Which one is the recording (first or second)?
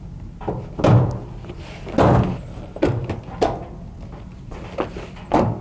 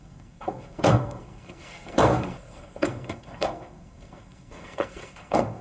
first